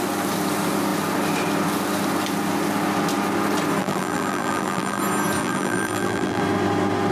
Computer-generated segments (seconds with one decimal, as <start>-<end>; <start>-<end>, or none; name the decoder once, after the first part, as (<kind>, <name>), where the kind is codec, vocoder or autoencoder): 3.8-5.0 (vocoder, BigVGAN v2); 5.4-6.4